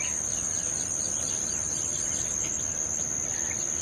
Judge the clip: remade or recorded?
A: recorded